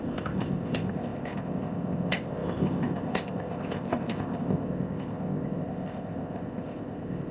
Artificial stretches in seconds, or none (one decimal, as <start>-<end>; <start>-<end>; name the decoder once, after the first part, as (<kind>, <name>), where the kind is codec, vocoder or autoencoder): 0.0-7.3 (codec, ZipCodec)